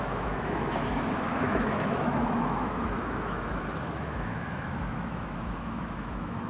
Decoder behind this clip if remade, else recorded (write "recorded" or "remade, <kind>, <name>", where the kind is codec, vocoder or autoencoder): remade, autoencoder, DAC-VAE